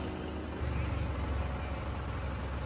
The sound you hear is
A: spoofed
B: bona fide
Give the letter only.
B